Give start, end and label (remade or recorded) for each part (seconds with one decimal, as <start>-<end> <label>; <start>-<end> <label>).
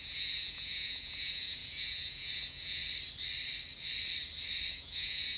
0.0-2.8 remade; 2.8-4.7 recorded; 4.7-5.4 remade